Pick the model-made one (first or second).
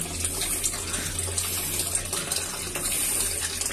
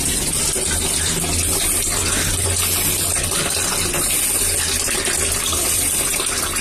second